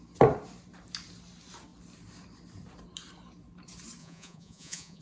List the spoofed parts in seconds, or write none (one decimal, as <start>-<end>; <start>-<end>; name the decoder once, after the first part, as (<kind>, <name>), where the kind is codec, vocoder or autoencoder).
4.0-5.0 (vocoder, Vocos)